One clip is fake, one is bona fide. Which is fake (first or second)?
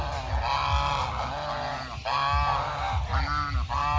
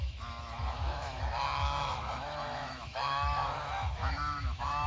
second